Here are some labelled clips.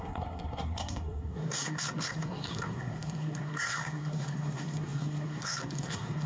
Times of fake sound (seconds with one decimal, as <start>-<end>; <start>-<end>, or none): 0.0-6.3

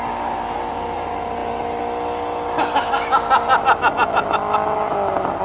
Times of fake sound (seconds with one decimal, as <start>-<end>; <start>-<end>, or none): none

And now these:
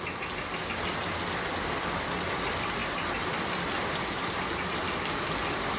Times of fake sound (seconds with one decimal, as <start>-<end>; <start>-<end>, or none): none

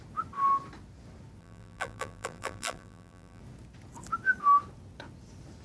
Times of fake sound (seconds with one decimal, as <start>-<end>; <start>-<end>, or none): 1.4-3.4